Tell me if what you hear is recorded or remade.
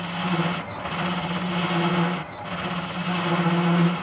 recorded